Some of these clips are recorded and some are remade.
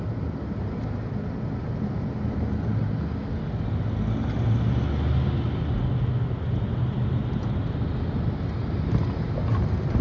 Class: recorded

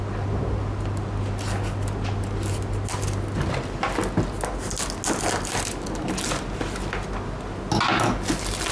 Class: recorded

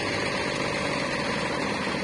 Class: recorded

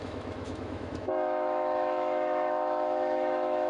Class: remade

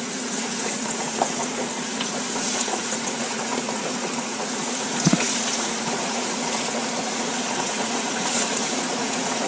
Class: remade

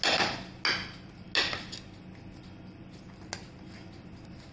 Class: recorded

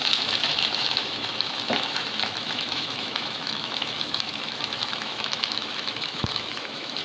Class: remade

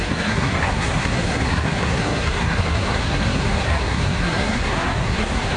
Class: remade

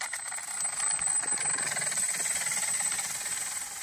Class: recorded